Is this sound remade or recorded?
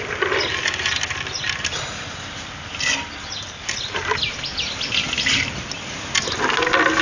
recorded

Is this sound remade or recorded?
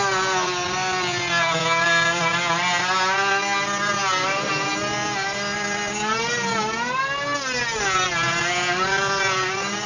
recorded